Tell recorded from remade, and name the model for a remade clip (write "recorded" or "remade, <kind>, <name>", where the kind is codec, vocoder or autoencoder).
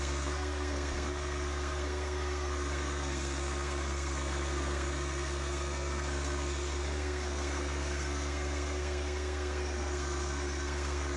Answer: remade, codec, SNAC